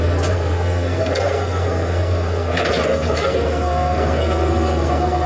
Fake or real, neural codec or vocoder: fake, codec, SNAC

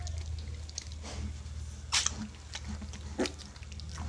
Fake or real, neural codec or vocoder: real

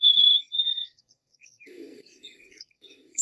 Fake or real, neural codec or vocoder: fake, codec, SNAC